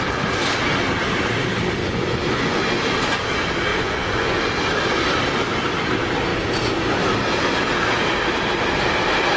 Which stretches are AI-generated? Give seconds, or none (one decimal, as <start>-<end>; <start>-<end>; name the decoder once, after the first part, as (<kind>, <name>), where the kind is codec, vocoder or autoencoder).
1.8-2.6 (vocoder, Vocos); 3.7-4.4